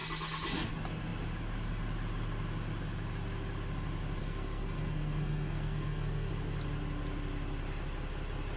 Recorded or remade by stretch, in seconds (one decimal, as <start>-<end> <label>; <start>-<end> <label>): 0.0-4.2 recorded; 4.2-6.3 remade; 6.3-8.6 recorded